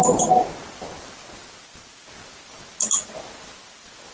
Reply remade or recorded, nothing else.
recorded